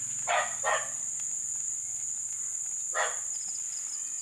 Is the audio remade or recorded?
recorded